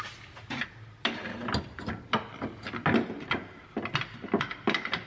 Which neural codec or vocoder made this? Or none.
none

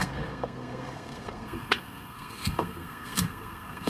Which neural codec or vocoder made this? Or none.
codec, SNAC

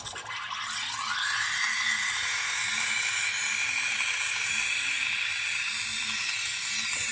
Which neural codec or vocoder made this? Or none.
none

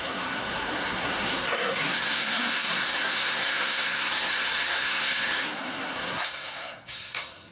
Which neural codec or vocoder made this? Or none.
codec, SNAC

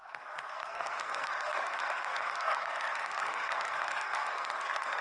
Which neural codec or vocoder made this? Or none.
codec, SNAC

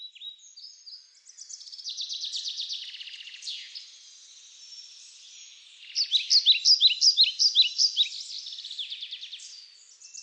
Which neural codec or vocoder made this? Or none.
none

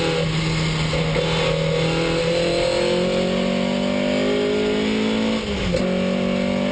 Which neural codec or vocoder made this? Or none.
none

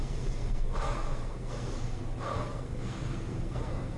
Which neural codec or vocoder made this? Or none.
codec, SNAC